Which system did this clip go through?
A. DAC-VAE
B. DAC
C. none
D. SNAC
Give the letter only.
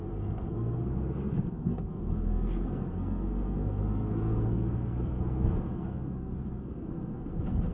D